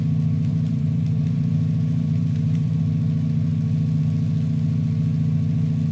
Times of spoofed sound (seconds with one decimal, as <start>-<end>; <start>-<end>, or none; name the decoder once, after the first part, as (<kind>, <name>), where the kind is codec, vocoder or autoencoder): 0.5-2.8 (vocoder, BigVGAN v2)